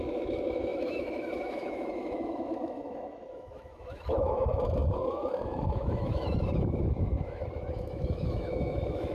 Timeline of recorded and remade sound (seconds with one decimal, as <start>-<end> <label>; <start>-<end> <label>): 0.0-9.1 remade